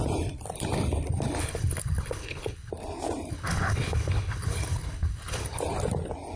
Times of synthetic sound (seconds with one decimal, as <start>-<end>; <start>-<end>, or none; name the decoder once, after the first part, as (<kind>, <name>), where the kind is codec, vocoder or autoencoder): 1.4-2.7 (codec, HILCodec); 3.3-5.6